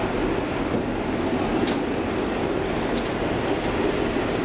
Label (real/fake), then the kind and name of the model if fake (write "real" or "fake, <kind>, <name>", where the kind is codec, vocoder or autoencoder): real